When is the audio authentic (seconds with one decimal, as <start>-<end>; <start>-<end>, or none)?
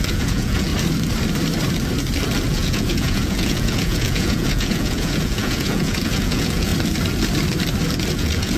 0.7-2.5; 6.7-8.1